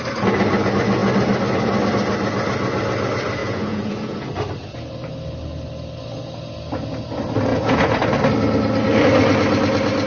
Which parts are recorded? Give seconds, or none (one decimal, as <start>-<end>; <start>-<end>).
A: 0.0-3.4; 4.3-7.5; 8.0-10.1

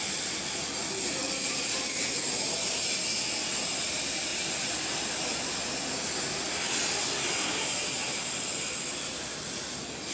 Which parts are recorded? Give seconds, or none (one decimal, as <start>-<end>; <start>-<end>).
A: 0.0-10.1

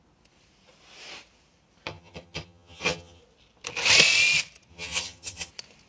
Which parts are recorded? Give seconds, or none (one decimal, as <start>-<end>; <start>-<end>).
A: 0.0-1.9; 3.2-4.7; 5.5-5.9

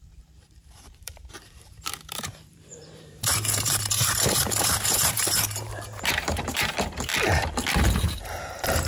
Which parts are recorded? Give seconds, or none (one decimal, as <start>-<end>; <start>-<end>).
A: 7.1-7.9

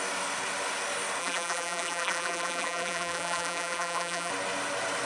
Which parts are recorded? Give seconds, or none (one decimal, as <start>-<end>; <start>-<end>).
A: 0.0-1.2; 4.3-5.1

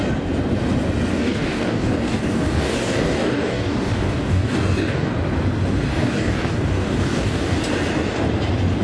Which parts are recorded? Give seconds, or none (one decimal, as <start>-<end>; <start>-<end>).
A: 0.0-1.1; 5.1-5.9; 7.6-8.8